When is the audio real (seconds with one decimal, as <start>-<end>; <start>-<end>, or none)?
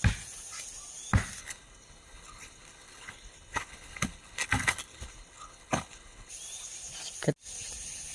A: 0.0-1.4; 6.3-8.1